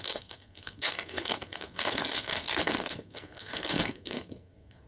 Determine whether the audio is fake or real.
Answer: fake